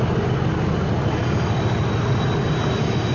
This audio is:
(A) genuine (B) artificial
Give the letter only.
A